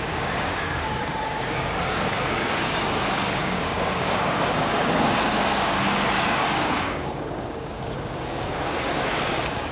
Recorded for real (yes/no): no